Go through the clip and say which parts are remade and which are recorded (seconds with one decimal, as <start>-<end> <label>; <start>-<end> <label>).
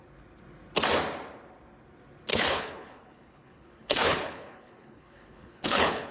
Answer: 0.0-2.3 recorded; 2.3-6.1 remade